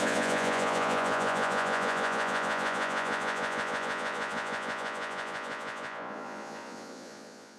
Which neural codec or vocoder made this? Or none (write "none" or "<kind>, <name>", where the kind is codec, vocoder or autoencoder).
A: vocoder, Vocos